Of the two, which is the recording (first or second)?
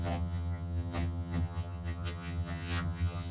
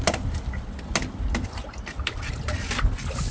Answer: second